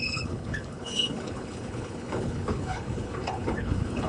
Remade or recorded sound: remade